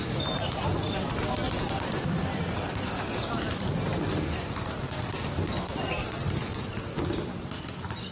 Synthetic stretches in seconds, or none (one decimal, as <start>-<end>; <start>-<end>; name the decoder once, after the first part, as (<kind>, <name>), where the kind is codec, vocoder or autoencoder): 0.0-4.8 (vocoder, BigVGAN v2); 6.7-8.1